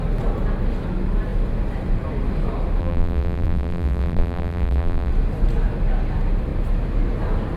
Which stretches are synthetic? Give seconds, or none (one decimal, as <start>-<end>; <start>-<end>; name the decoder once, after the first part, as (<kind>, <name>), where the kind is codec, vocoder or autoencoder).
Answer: 2.8-5.1 (vocoder, BigVGAN v2)

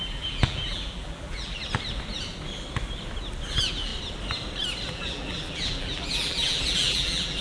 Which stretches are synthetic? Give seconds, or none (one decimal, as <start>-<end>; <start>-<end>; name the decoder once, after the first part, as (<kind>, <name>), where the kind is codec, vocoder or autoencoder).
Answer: 0.0-1.6 (vocoder, BigVGAN v2); 3.5-3.9; 4.9-7.4

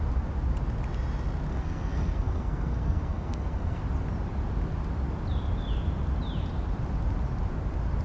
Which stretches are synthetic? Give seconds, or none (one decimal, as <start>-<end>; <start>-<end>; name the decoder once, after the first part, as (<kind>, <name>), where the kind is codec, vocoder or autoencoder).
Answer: 1.5-3.8 (codec, SNAC)

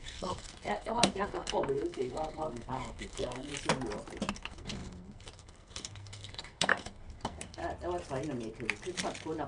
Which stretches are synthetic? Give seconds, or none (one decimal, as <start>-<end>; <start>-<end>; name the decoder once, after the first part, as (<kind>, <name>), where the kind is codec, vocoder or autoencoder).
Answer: 0.0-3.5 (codec, SNAC); 4.3-7.6

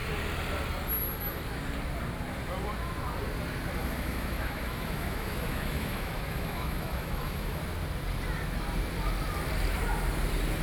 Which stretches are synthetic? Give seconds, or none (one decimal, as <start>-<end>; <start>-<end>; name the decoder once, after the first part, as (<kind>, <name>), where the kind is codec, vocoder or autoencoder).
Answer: 3.8-7.6 (autoencoder, DAC-VAE)